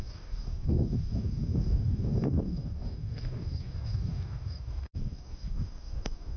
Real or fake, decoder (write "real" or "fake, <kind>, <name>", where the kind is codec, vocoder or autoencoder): fake, codec, DAC